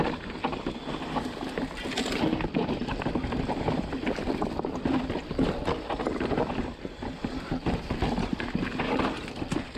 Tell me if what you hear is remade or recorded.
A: recorded